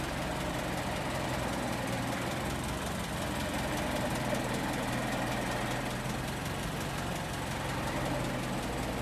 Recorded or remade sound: recorded